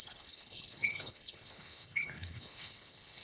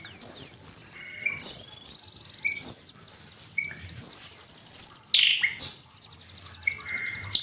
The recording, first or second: second